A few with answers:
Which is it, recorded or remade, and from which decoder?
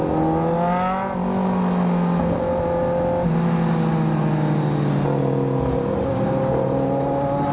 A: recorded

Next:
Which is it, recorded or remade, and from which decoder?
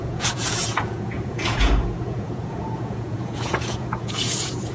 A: remade, vocoder, Vocos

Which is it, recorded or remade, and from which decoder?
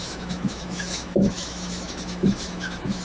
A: remade, autoencoder, DAC-VAE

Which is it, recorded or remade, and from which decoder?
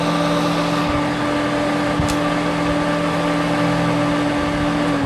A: recorded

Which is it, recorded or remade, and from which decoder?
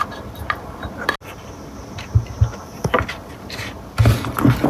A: recorded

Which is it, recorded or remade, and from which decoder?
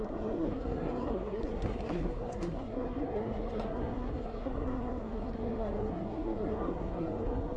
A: remade, codec, SNAC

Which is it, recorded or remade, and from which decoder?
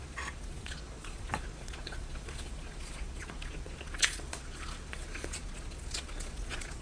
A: remade, vocoder, Vocos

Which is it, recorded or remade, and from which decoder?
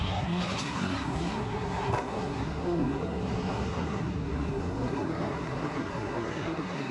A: remade, codec, SNAC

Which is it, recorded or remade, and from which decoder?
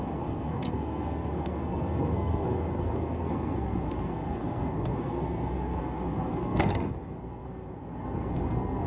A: remade, codec, SNAC